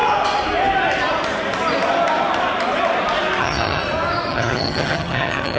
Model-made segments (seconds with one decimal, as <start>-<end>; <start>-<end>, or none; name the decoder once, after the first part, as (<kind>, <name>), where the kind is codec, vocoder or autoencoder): 3.4-3.8 (vocoder, HiFi-GAN); 4.3-5.6